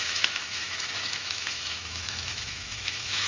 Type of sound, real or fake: fake